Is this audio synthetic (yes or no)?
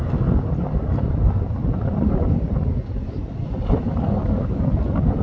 yes